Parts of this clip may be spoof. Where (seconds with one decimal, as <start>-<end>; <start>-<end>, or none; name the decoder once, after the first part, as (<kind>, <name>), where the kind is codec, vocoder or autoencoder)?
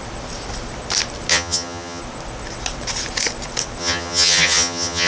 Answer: 1.3-2.0 (vocoder, HiFi-GAN); 3.8-5.1